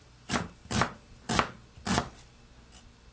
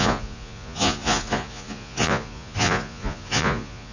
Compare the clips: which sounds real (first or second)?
first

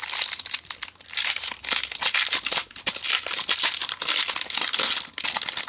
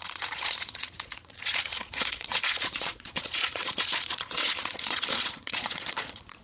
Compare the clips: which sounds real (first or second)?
first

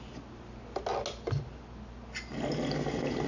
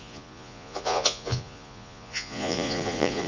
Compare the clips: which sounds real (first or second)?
first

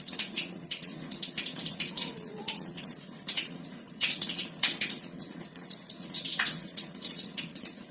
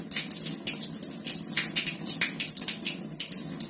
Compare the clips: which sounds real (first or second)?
second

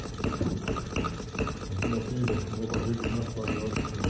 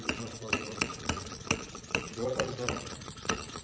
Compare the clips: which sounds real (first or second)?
first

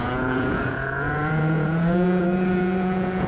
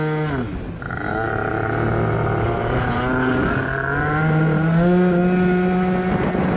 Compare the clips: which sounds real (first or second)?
second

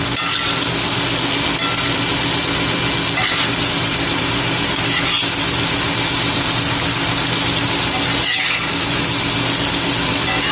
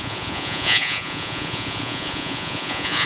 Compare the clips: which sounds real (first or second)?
first